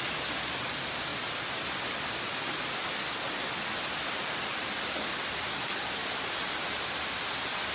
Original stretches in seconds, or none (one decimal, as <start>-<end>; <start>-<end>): 0.0-7.7